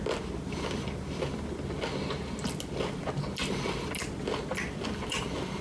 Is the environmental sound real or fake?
real